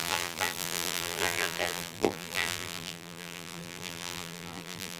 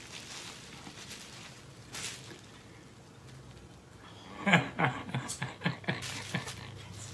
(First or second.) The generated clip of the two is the first